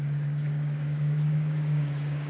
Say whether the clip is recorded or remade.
remade